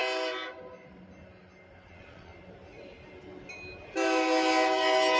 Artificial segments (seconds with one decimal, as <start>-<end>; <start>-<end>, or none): 1.9-2.3